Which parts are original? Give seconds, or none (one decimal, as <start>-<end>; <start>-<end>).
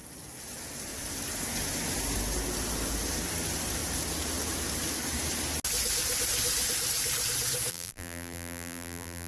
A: 0.0-7.7